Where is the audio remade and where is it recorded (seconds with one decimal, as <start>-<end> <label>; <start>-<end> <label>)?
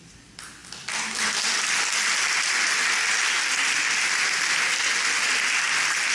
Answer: 0.0-6.1 recorded